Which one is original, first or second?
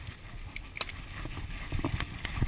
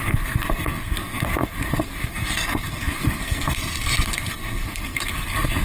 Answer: first